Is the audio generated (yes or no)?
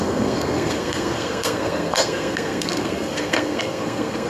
yes